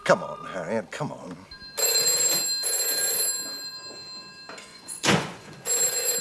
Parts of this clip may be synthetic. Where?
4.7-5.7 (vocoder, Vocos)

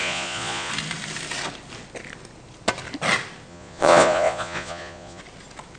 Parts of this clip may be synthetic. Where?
0.0-0.7 (vocoder, Vocos); 3.5-5.2

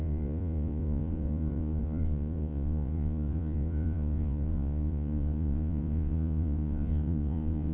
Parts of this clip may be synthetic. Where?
0.0-7.7 (vocoder, Vocos)

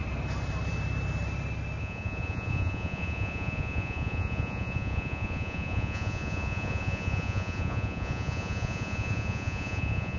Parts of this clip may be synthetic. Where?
1.8-10.2 (vocoder, Vocos)

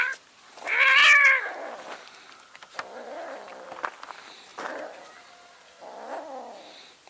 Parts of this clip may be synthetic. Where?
none

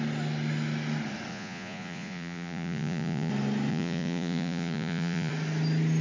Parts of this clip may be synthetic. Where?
1.3-3.3 (vocoder, Vocos); 3.7-5.3

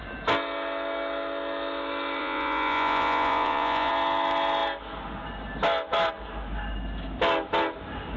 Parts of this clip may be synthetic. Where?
2.2-3.9 (vocoder, Vocos)

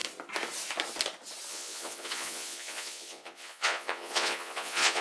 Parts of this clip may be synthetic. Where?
1.5-5.0 (vocoder, Vocos)